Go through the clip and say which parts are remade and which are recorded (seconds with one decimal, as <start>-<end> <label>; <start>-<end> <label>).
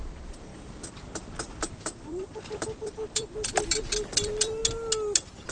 0.0-4.6 remade; 4.6-5.5 recorded